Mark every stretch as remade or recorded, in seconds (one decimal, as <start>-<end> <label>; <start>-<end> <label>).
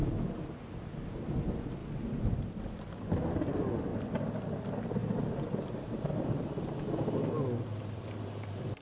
0.0-3.9 recorded; 3.9-4.5 remade; 4.5-5.0 recorded; 5.0-8.2 remade; 8.2-8.8 recorded